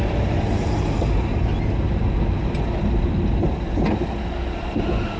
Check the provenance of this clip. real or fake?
real